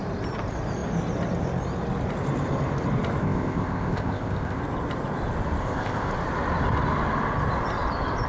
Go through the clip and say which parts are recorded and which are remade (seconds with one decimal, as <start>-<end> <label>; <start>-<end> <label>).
0.0-3.2 recorded; 3.2-4.6 remade; 4.6-5.6 recorded; 5.6-6.1 remade; 6.1-8.3 recorded